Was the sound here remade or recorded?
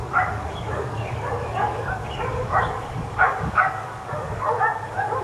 remade